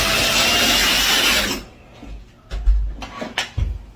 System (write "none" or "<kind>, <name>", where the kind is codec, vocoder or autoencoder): none